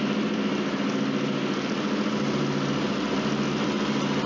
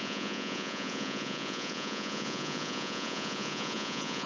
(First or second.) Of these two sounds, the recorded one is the first